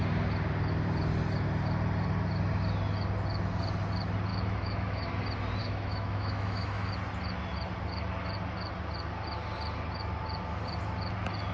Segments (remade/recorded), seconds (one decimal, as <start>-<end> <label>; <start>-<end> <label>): 0.0-4.3 recorded; 4.3-5.1 remade; 5.1-5.6 recorded; 5.6-6.9 remade; 6.9-11.5 recorded